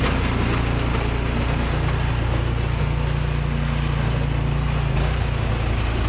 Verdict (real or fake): real